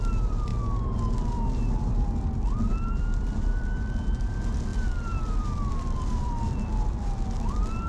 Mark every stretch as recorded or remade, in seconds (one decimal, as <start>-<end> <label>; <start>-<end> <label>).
0.0-0.5 remade; 0.5-1.3 recorded; 1.3-7.9 remade